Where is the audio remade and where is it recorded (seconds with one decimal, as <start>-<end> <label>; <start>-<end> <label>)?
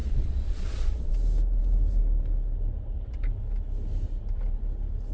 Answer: 0.0-1.1 remade; 1.1-5.1 recorded